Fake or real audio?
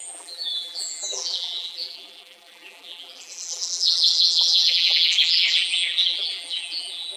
fake